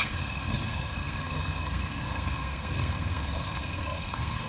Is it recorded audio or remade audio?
remade